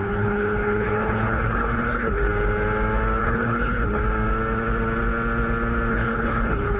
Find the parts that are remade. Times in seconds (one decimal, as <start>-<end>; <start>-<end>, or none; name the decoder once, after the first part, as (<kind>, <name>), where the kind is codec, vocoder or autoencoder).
0.0-2.3 (codec, HILCodec); 3.2-4.0; 5.9-6.8